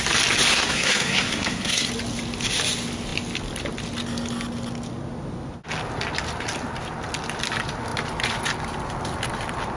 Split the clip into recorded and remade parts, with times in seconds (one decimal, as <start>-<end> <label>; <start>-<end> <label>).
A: 0.0-0.5 recorded; 0.5-1.9 remade; 1.9-9.8 recorded